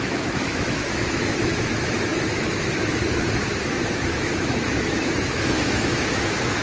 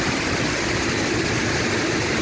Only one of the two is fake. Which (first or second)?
first